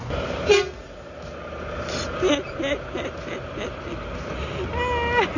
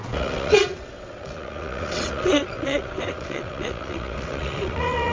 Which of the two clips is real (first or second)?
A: first